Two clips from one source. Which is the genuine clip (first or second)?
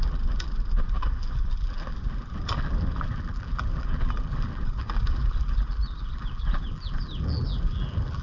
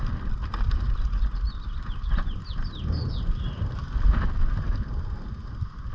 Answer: second